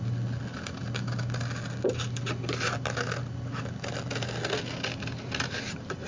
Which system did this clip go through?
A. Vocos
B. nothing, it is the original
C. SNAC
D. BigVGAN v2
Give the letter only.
B